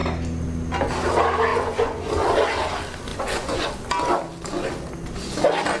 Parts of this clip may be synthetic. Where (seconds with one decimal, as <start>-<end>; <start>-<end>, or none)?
1.5-2.1; 3.1-3.7